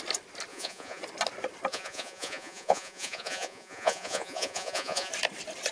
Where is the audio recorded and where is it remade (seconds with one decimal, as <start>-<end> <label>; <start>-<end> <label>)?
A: 0.0-0.5 recorded; 0.5-1.0 remade; 1.0-1.7 recorded; 1.7-5.1 remade; 5.1-5.7 recorded